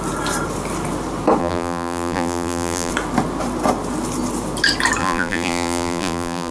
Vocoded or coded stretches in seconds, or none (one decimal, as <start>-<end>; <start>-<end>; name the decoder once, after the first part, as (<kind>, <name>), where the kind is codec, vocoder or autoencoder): 1.4-2.9 (vocoder, BigVGAN v2); 5.0-6.5